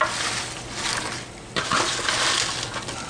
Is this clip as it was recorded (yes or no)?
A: yes